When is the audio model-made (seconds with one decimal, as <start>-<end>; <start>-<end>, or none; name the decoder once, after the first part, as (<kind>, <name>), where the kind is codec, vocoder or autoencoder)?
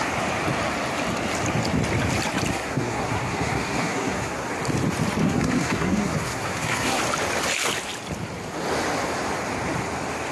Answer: 2.5-4.5 (codec, SNAC); 5.2-7.0